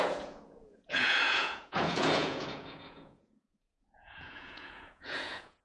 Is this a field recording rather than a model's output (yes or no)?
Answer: no